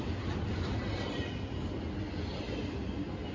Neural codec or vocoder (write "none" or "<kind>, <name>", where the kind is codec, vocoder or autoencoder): none